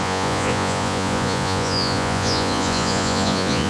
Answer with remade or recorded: remade